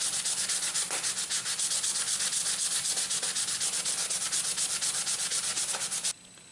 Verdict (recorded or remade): recorded